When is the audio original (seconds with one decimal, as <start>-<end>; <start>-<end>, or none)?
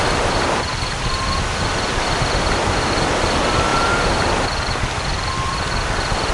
0.0-6.3